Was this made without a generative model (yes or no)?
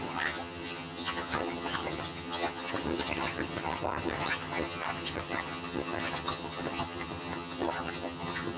no